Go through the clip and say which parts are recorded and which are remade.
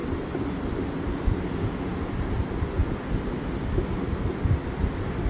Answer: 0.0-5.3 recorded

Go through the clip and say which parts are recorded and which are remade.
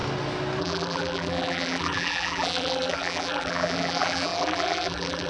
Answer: 0.0-0.6 recorded; 0.6-5.3 remade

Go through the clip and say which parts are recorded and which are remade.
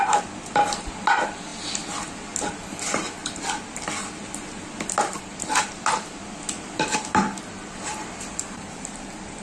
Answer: 0.0-1.5 remade; 1.5-2.4 recorded; 2.4-3.2 remade; 3.2-5.1 recorded; 5.1-9.4 remade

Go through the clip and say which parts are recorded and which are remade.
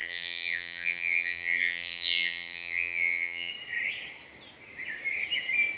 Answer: 0.0-3.5 remade; 3.5-5.8 recorded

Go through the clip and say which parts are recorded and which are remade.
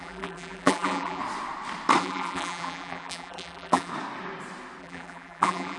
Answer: 0.0-1.2 remade; 1.2-2.0 recorded; 2.0-3.9 remade; 3.9-4.8 recorded; 4.8-5.8 remade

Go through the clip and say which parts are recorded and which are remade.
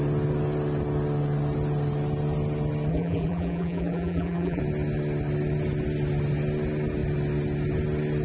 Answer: 0.0-2.9 recorded; 2.9-4.6 remade; 4.6-8.2 recorded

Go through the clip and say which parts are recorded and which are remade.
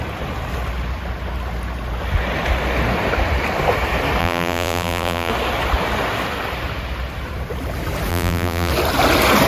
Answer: 0.0-4.2 recorded; 4.2-5.3 remade; 5.3-8.1 recorded; 8.1-8.7 remade; 8.7-9.5 recorded